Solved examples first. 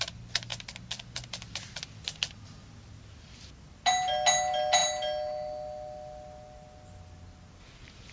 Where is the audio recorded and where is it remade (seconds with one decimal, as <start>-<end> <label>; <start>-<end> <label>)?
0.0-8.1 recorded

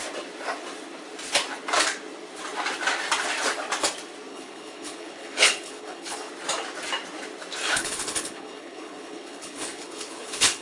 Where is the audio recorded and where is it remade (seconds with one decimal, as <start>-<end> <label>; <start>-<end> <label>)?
0.0-4.3 recorded; 4.3-6.3 remade; 6.3-7.6 recorded; 7.6-10.6 remade

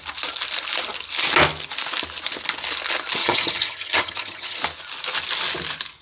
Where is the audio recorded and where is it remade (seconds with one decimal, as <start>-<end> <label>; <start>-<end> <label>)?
0.0-3.2 recorded; 3.2-4.6 remade; 4.6-6.0 recorded

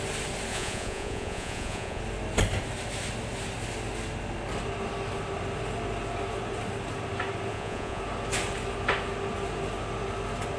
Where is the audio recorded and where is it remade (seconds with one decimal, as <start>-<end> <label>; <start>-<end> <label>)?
0.0-0.5 recorded; 0.5-2.0 remade; 2.0-7.5 recorded; 7.5-8.0 remade; 8.0-10.6 recorded

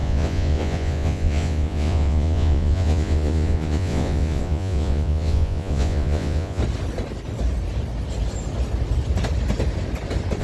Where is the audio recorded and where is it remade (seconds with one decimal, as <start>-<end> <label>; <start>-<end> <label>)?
0.0-6.6 remade; 6.6-10.4 recorded

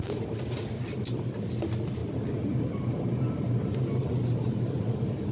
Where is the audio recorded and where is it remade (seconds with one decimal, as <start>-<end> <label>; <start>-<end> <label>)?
0.0-2.0 recorded; 2.0-5.3 remade

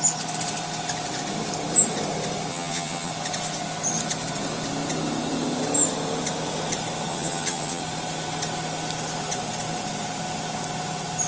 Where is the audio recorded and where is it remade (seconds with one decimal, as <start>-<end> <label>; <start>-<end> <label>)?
0.0-2.5 recorded; 2.5-3.1 remade; 3.1-7.1 recorded; 7.1-7.8 remade; 7.8-11.3 recorded

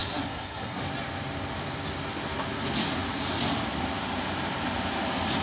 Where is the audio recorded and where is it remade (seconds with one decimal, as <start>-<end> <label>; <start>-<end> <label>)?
0.0-0.8 remade; 0.8-5.4 recorded